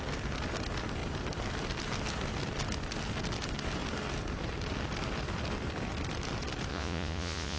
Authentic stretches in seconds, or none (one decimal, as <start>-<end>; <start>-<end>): 0.0-6.7